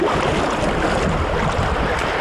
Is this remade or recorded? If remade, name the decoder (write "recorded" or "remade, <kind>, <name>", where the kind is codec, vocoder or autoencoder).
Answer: recorded